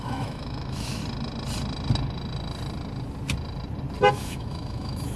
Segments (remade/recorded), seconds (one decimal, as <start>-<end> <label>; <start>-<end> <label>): 0.0-1.0 remade; 1.0-4.1 recorded; 4.1-5.2 remade